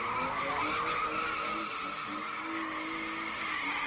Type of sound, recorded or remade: recorded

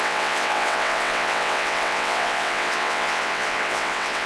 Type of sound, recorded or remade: remade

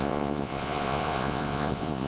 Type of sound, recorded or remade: remade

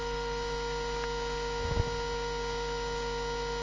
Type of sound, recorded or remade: recorded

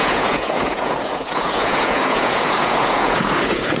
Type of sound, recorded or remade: remade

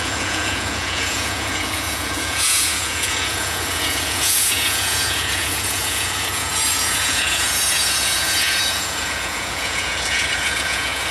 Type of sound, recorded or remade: remade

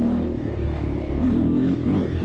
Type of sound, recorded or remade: remade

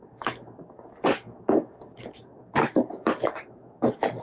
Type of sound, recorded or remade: remade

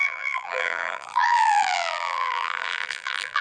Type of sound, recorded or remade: remade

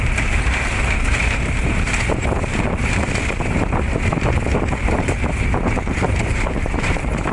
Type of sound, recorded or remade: remade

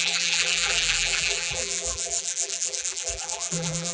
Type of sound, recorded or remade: remade